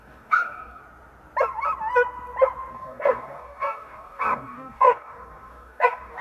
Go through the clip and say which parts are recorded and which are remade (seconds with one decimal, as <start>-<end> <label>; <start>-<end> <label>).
0.0-0.8 remade; 0.8-2.7 recorded; 2.7-6.2 remade